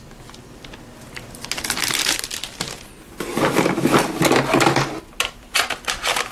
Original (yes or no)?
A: yes